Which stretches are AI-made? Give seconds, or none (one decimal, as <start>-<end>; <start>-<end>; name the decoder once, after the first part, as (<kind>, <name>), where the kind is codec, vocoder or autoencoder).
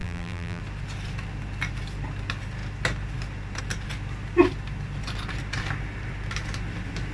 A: 0.0-0.6 (vocoder, BigVGAN v2)